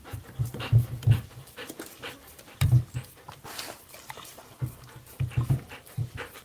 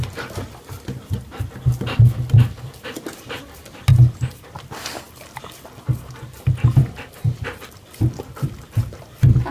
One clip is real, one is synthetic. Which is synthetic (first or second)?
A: first